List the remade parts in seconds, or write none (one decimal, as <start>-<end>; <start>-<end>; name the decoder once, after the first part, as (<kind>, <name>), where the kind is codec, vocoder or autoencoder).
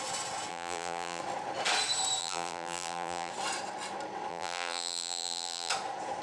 0.5-1.2 (vocoder, BigVGAN v2); 2.2-3.3; 4.3-5.7